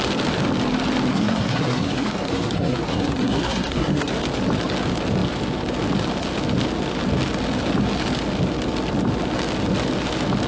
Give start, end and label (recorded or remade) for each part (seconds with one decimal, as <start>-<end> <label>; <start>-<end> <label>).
0.0-1.1 recorded; 1.1-4.1 remade; 4.1-10.5 recorded

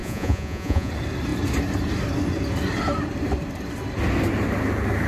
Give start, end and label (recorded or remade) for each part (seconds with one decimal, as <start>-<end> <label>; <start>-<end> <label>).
0.0-0.9 remade; 0.9-5.1 recorded

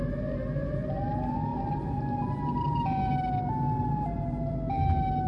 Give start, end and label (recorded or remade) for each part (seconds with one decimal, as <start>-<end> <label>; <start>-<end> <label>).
0.0-5.3 recorded

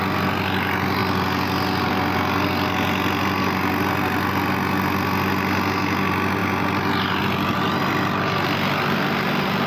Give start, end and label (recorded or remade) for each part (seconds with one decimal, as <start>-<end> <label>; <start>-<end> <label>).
0.0-9.7 recorded